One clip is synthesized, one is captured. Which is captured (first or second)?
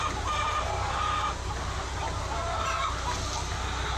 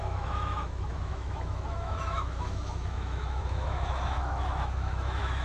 first